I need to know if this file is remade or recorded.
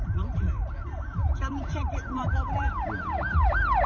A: remade